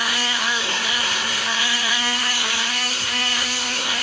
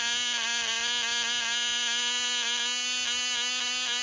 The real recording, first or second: second